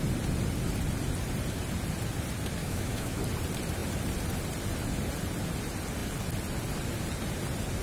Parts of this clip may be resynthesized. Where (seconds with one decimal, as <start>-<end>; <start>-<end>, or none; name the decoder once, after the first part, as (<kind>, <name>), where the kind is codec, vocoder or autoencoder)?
2.6-3.2 (autoencoder, DAC-VAE)